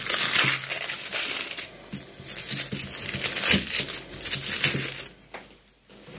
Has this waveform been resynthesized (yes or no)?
no